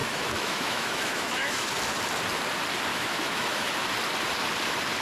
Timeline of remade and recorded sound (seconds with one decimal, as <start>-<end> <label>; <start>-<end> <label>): 0.0-1.7 remade; 1.7-2.9 recorded; 2.9-3.7 remade; 3.7-5.0 recorded